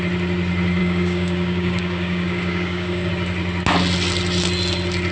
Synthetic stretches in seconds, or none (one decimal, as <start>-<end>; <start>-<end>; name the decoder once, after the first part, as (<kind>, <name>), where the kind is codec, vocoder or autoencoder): 0.8-3.1 (codec, DAC)